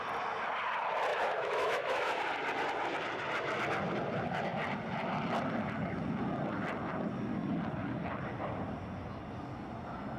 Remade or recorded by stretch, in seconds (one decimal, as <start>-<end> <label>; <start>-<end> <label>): 0.0-1.1 recorded; 1.1-2.2 remade; 2.2-10.2 recorded